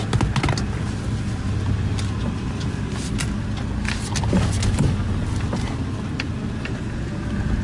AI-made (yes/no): no